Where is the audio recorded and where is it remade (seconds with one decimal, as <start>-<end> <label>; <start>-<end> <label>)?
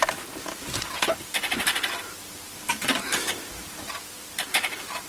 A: 0.0-5.1 recorded